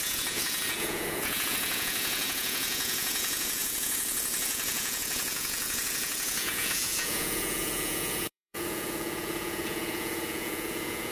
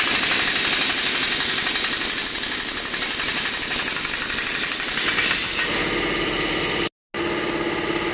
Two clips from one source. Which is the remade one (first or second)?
first